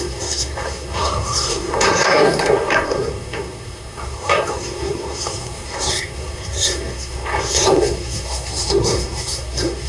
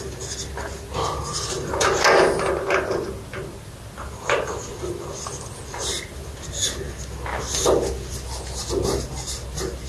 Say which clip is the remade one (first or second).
first